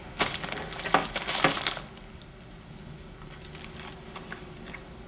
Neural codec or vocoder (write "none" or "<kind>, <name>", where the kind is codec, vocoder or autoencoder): none